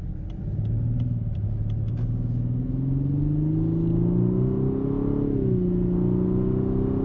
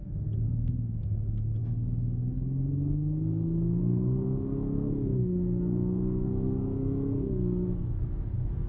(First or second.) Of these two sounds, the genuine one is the first